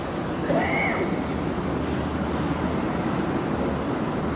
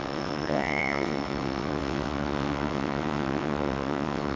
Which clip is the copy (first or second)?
second